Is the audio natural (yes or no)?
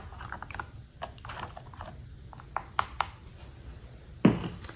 yes